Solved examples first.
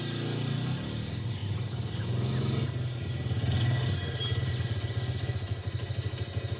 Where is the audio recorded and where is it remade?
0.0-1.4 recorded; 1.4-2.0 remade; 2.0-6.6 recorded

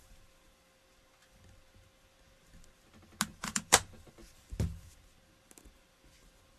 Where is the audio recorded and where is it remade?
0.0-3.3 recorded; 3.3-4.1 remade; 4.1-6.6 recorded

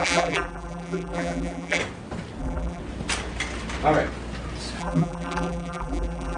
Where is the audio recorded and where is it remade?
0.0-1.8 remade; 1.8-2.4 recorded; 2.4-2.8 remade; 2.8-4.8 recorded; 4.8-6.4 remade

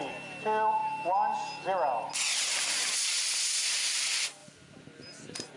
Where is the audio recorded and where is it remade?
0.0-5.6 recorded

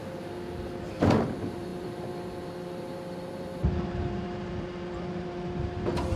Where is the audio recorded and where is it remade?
0.0-0.9 recorded; 0.9-6.2 remade

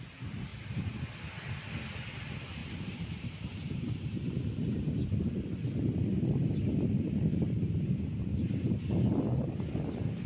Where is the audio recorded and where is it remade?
0.0-0.5 recorded; 0.5-1.0 remade; 1.0-2.6 recorded; 2.6-5.4 remade; 5.4-6.1 recorded; 6.1-9.1 remade; 9.1-10.3 recorded